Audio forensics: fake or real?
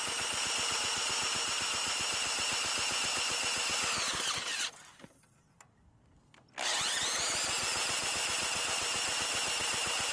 real